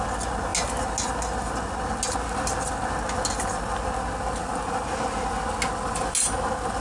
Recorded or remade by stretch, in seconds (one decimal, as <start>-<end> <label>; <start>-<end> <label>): 0.0-6.8 recorded